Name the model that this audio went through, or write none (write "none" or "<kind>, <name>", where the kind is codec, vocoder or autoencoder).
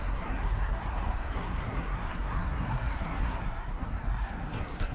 codec, SNAC